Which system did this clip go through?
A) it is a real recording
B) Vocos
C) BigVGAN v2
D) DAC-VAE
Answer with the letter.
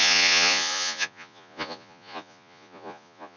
B